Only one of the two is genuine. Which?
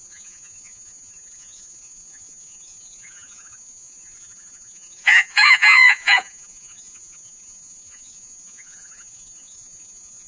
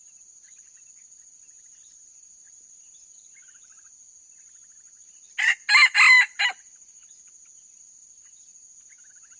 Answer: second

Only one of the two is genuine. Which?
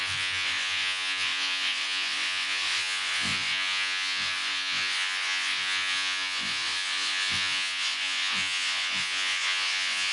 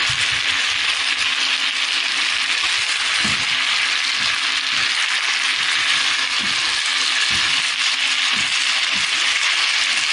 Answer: second